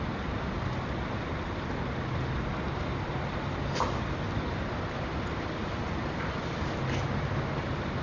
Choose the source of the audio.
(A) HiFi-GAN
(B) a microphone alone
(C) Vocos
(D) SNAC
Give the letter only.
B